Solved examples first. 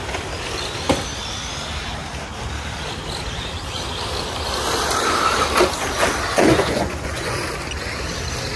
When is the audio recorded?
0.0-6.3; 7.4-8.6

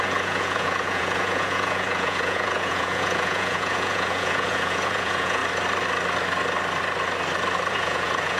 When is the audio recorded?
5.4-7.7

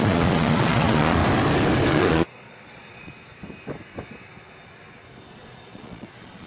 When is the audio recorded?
1.2-1.9; 3.1-5.3

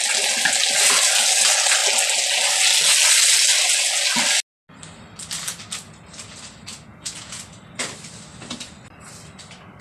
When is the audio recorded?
0.0-6.9; 7.4-9.8

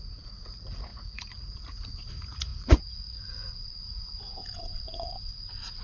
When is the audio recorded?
none

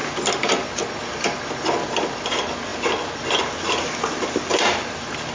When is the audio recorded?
0.0-5.3

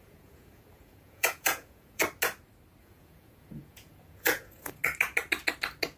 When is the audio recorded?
2.0-2.8; 4.8-6.0